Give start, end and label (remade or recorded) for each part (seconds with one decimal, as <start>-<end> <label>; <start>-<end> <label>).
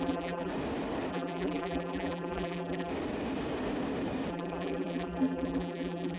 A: 0.0-0.5 remade; 0.5-1.1 recorded; 1.1-2.9 remade; 2.9-4.3 recorded; 4.3-6.2 remade